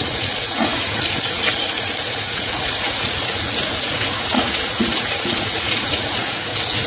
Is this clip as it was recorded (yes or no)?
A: no